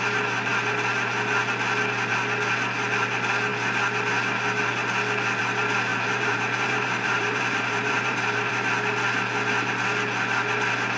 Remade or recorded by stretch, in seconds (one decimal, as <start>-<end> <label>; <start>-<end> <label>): 0.0-5.9 recorded; 5.9-8.5 remade; 8.5-11.0 recorded